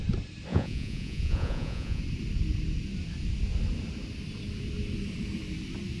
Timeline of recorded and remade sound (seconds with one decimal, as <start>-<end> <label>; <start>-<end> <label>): 0.0-0.5 recorded; 0.5-2.0 remade; 2.0-6.0 recorded

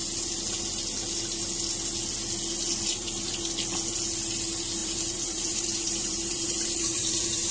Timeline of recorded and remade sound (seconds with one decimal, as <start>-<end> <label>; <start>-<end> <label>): 0.0-4.8 recorded; 4.8-7.5 remade

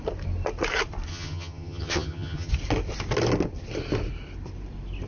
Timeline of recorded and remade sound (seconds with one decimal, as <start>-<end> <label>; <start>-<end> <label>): 0.0-1.1 recorded; 1.1-2.5 remade; 2.5-5.1 recorded

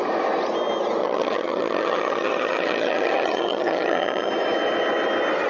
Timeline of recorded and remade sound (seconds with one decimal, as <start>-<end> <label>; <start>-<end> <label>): 0.0-1.0 recorded; 1.0-4.3 remade; 4.3-5.5 recorded

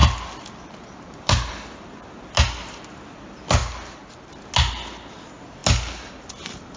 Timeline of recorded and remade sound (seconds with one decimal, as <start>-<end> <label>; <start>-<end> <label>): 0.0-6.8 recorded

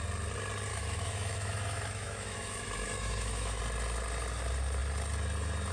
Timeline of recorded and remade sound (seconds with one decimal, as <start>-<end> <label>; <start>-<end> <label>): 0.0-0.7 recorded; 0.7-3.6 remade; 3.6-5.7 recorded

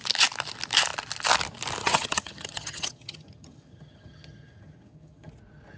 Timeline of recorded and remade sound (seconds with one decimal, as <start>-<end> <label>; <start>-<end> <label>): 0.0-1.8 recorded; 1.8-5.3 remade; 5.3-5.8 recorded